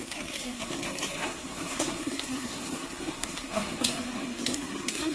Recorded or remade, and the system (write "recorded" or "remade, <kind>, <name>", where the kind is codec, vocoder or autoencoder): remade, codec, SNAC